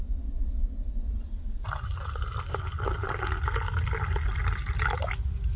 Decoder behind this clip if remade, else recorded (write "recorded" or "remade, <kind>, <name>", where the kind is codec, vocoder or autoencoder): recorded